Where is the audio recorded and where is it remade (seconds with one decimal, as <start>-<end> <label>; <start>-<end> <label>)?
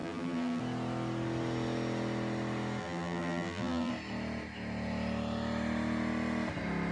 0.0-0.6 remade; 0.6-2.8 recorded; 2.8-3.9 remade; 3.9-6.9 recorded